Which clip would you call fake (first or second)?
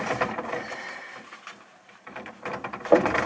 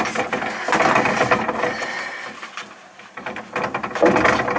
first